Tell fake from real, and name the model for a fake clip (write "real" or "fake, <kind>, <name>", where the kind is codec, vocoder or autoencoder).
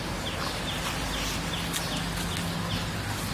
real